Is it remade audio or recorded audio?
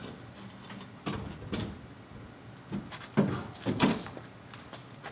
recorded